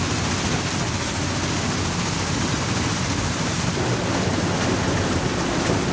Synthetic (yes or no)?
yes